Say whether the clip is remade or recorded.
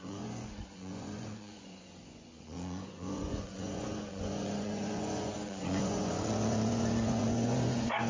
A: remade